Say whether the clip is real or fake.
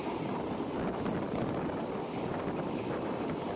real